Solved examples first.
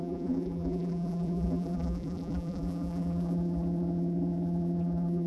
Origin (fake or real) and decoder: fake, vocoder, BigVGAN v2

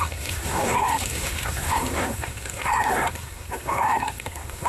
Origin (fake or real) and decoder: fake, codec, SNAC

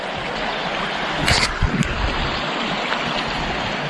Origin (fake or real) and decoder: real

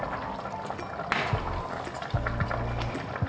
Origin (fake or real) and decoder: real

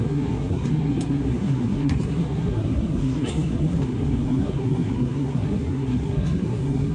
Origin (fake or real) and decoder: fake, codec, SNAC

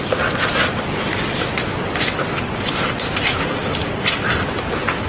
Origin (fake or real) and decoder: real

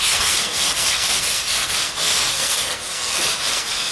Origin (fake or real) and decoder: fake, codec, SNAC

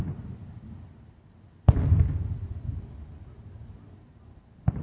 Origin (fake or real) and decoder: real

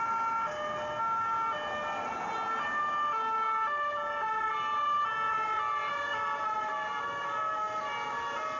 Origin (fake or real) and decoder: real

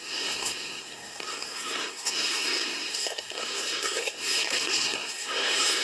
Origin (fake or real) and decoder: fake, codec, SNAC